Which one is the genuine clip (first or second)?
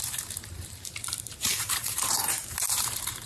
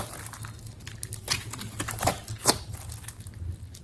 second